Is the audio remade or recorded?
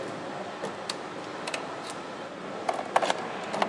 recorded